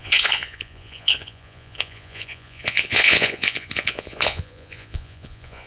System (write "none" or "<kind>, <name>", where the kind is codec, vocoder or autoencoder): vocoder, Vocos